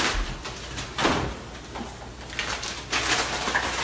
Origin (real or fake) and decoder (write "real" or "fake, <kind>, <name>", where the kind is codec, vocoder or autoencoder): real